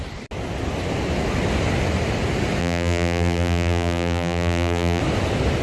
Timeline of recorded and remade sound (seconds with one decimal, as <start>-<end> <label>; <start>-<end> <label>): 0.0-2.6 recorded; 2.6-5.0 remade; 5.0-5.6 recorded